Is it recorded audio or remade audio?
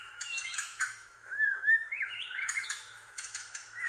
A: remade